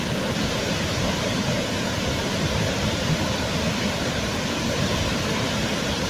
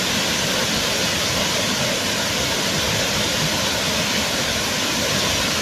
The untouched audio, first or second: second